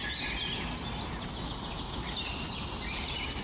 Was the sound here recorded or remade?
recorded